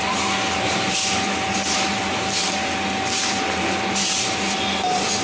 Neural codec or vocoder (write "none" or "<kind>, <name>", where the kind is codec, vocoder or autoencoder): none